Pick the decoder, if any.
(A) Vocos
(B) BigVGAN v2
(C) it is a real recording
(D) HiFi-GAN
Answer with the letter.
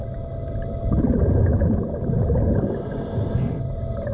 C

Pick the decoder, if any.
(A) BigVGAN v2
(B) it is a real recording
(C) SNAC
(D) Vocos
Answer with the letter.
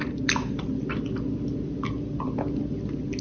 B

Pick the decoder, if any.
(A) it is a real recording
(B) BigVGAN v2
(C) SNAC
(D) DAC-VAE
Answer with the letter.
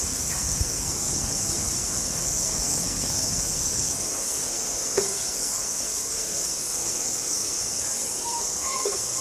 C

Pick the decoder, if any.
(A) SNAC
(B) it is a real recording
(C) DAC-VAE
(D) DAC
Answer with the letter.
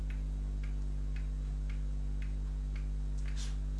B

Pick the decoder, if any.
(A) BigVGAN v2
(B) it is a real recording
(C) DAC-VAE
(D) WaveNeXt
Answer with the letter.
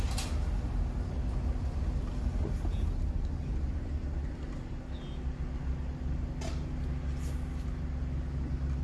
B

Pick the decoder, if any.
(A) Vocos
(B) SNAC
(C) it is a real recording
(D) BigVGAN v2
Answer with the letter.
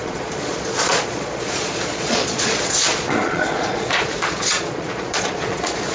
A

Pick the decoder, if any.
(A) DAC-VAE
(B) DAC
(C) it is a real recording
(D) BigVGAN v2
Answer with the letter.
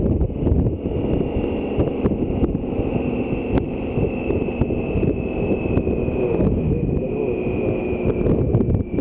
C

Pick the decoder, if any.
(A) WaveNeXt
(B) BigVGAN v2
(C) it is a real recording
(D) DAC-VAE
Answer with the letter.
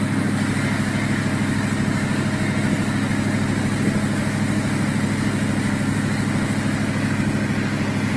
C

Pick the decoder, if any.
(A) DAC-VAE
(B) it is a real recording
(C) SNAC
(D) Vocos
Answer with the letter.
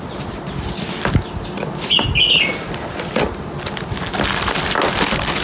B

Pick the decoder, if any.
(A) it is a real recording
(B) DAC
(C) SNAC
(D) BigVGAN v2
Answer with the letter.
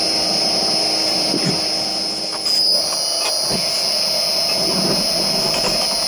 A